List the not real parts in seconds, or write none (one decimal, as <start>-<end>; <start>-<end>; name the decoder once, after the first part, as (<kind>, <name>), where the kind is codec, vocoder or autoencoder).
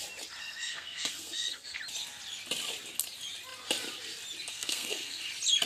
0.4-1.8 (codec, SNAC); 4.5-5.2